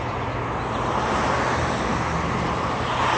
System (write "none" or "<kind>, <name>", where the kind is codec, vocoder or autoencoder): none